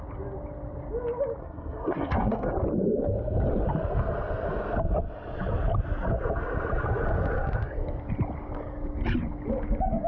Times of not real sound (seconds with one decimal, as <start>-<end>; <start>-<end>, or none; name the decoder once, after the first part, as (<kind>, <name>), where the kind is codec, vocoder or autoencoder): 1.4-2.5 (codec, SNAC)